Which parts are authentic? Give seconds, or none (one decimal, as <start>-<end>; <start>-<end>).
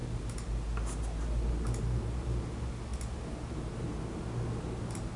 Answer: 0.0-5.2